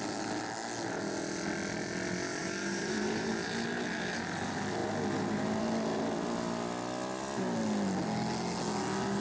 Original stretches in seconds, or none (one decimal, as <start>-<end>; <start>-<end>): 0.0-2.4; 3.3-9.2